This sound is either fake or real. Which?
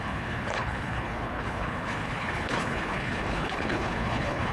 fake